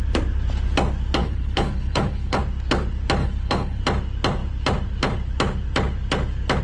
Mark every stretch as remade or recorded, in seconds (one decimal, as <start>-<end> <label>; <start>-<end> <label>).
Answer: 0.0-1.2 recorded; 1.2-2.4 remade; 2.4-3.2 recorded; 3.2-3.8 remade; 3.8-6.6 recorded